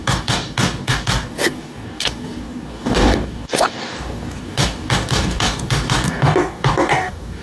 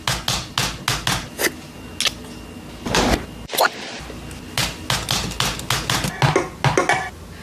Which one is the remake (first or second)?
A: first